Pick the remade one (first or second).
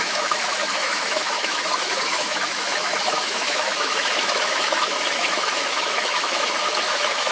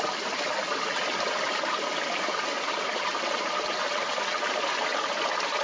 first